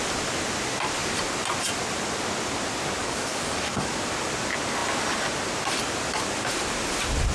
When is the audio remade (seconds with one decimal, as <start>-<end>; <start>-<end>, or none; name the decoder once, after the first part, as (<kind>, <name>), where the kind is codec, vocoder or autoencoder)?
3.0-3.9 (codec, DAC)